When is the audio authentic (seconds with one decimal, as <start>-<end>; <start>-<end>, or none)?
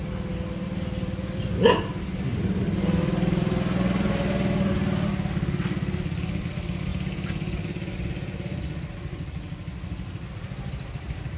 0.0-11.4